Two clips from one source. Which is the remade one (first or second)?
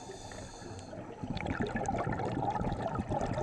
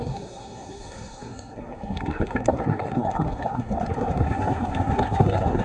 second